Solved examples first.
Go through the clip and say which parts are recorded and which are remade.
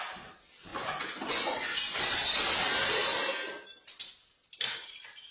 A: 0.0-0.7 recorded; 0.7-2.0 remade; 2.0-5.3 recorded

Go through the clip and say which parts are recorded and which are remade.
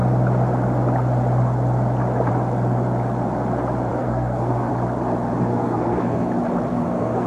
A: 0.0-3.9 recorded; 3.9-4.7 remade; 4.7-5.5 recorded; 5.5-6.3 remade; 6.3-6.7 recorded; 6.7-7.3 remade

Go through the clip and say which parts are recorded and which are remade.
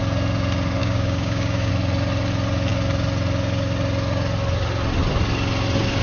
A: 0.0-0.8 recorded; 0.8-1.7 remade; 1.7-6.0 recorded